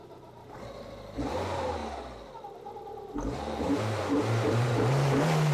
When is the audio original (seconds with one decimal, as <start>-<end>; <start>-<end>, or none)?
1.8-3.6